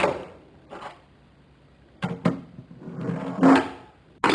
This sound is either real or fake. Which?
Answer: real